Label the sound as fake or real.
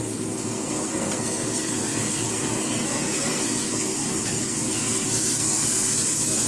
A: fake